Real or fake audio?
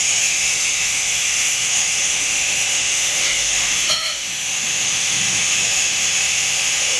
fake